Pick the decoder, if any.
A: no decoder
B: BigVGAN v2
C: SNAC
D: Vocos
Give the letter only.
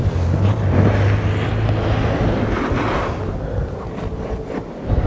A